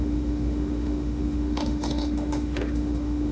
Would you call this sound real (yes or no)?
no